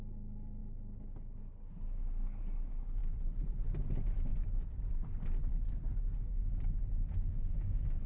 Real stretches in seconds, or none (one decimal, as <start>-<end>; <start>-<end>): 0.0-3.0; 3.6-4.3; 5.9-8.1